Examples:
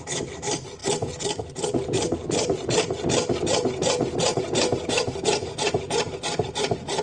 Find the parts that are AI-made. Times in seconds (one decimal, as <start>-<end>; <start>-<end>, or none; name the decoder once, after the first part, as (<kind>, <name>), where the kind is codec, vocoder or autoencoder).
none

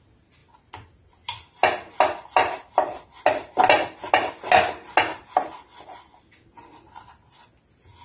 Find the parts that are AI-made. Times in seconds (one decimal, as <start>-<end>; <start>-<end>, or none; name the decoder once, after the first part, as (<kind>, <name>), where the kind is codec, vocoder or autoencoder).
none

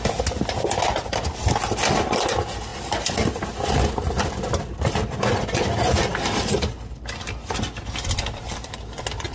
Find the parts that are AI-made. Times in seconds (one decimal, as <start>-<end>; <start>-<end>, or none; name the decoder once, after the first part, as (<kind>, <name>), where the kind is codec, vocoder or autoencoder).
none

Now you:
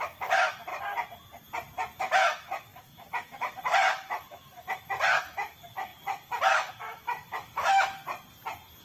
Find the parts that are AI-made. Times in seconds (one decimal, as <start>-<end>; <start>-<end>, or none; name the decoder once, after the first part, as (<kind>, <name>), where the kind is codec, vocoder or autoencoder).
0.0-0.7 (autoencoder, DAC-VAE); 2.0-8.0

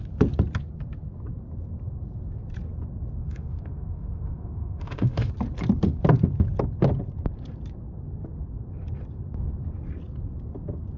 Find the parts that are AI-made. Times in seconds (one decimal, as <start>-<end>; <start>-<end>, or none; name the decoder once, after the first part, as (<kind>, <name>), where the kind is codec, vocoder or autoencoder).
3.2-5.3 (autoencoder, DAC-VAE)

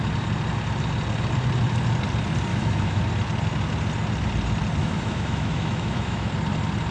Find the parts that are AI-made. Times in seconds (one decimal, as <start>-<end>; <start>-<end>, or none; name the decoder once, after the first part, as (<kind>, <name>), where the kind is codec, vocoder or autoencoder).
2.5-3.0 (autoencoder, DAC-VAE); 4.8-6.3

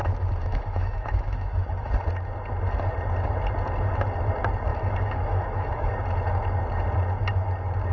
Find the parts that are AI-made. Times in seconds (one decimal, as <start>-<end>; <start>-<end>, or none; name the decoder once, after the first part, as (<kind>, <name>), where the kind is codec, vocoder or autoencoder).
0.0-1.9 (autoencoder, DAC-VAE); 4.7-5.9